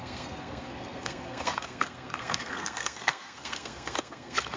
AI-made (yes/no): yes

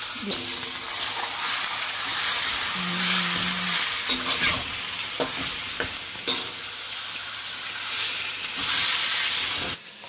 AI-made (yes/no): no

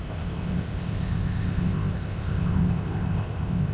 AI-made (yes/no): yes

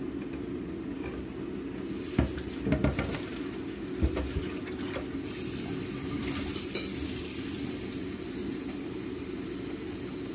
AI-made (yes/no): no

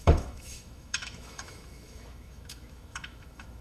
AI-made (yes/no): yes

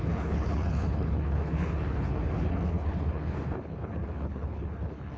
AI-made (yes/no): yes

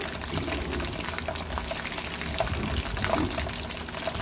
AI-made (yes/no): no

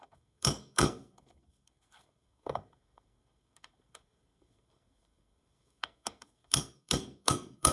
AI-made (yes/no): yes